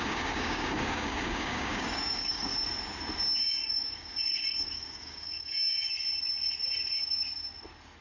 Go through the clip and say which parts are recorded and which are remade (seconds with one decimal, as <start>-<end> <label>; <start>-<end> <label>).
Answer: 0.0-2.5 remade; 2.5-3.4 recorded; 3.4-5.9 remade; 5.9-8.0 recorded